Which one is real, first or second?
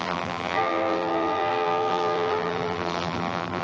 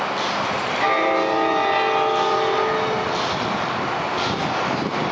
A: second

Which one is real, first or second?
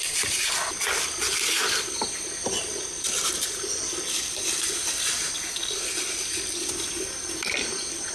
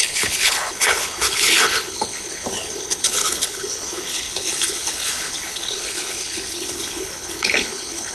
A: first